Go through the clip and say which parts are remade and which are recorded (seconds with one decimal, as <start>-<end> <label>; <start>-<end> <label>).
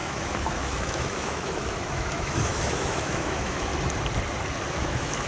0.0-3.7 remade; 3.7-4.7 recorded; 4.7-5.3 remade